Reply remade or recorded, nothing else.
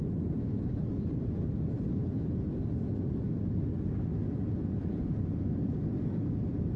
recorded